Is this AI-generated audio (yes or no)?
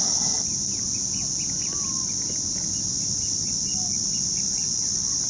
no